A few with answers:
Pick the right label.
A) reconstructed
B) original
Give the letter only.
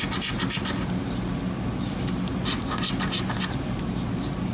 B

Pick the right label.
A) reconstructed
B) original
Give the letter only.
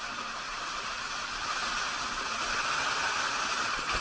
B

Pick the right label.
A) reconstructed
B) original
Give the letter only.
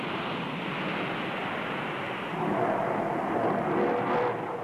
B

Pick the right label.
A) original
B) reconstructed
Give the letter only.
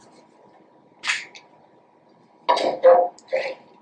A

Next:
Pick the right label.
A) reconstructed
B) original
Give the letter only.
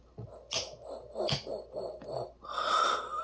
B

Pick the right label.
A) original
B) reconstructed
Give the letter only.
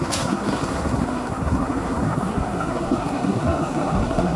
B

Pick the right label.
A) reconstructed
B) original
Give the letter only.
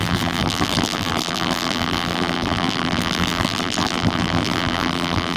A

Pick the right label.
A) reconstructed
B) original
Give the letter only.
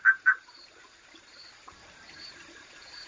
A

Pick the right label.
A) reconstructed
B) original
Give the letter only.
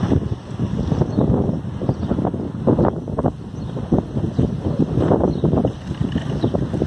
B